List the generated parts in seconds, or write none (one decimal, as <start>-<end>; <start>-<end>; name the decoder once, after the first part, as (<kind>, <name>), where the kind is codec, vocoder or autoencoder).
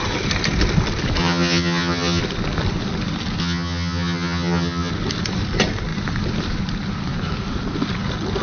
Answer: 1.2-2.2 (vocoder, HiFi-GAN); 3.4-4.9